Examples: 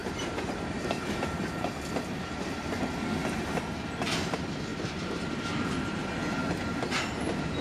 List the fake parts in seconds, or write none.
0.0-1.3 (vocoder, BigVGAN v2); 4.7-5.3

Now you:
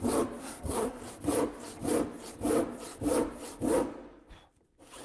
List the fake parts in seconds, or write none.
0.4-1.0 (codec, SNAC)

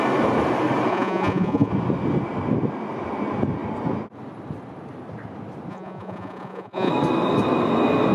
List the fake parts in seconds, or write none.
0.9-1.7 (vocoder, Vocos); 5.7-6.9

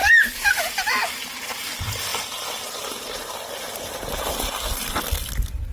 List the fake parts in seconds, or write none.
0.0-1.0 (vocoder, BigVGAN v2)